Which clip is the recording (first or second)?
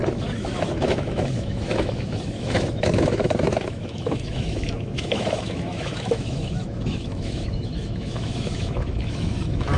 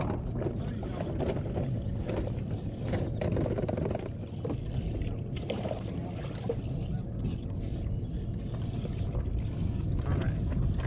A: second